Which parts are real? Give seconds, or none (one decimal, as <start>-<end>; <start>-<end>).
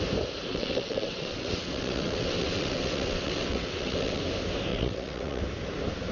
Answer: 0.0-0.5; 4.2-4.7; 5.4-6.1